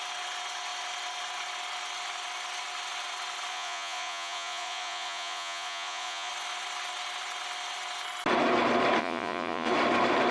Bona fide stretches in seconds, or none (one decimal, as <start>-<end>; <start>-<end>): 0.0-3.5; 6.3-9.0; 9.7-10.3